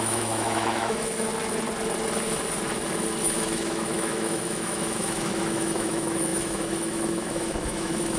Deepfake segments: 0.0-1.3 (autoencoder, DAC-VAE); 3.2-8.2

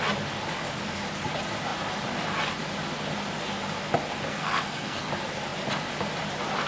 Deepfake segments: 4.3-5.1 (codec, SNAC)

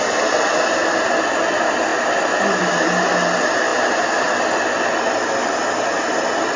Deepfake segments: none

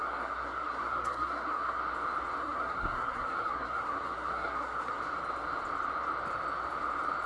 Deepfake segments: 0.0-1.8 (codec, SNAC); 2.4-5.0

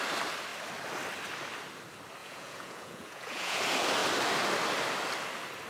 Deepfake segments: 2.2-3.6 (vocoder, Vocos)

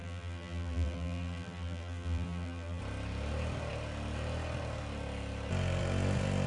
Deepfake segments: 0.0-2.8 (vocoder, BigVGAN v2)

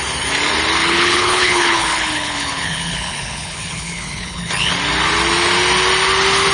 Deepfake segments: 0.8-4.7 (codec, HILCodec)